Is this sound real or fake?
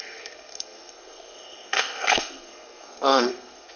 fake